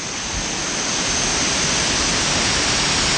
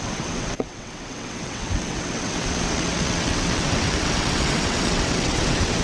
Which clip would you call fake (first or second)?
second